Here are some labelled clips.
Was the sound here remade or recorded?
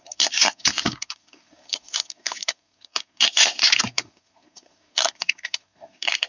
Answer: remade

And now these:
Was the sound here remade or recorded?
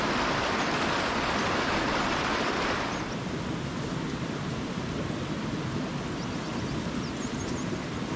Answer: recorded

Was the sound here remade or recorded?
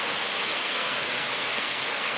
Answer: remade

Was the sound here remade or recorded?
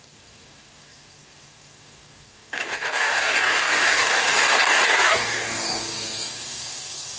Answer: remade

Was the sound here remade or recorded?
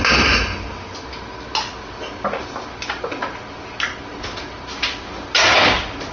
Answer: recorded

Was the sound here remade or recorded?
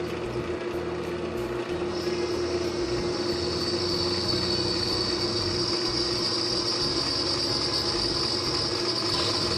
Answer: recorded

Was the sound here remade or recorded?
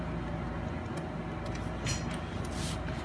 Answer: recorded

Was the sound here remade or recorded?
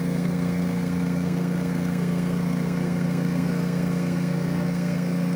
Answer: remade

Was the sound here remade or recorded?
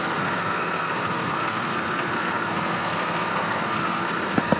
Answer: remade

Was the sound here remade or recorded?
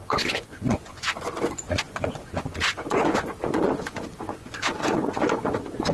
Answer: remade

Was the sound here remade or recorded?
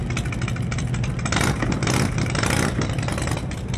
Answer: recorded